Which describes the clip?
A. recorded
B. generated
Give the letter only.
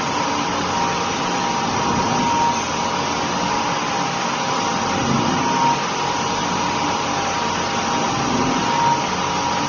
A